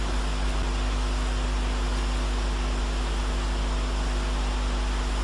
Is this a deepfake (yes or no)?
no